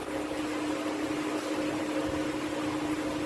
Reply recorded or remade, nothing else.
recorded